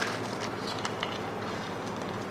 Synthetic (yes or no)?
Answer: no